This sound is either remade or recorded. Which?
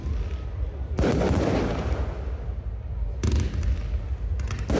recorded